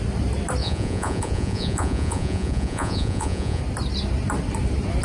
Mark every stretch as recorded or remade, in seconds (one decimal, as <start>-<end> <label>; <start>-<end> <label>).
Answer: 0.0-0.6 recorded; 0.6-3.6 remade; 3.6-5.0 recorded